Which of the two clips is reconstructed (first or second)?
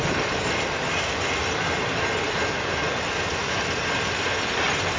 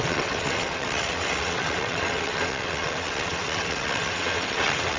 second